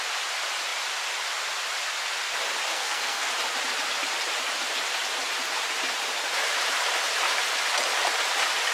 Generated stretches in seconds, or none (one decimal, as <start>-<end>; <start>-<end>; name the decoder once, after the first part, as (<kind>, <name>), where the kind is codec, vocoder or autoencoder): 2.7-3.3 (codec, SNAC)